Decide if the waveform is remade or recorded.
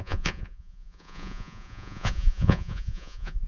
remade